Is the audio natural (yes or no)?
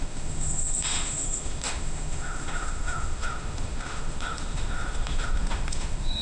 no